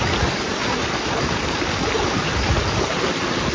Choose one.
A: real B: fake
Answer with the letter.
A